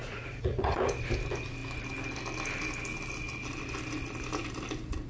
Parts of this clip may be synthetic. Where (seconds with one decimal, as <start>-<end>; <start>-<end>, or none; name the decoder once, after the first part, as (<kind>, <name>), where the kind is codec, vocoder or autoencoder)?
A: 0.0-0.9 (vocoder, Vocos)